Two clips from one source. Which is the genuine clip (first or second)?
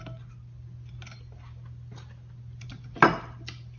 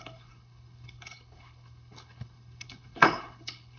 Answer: first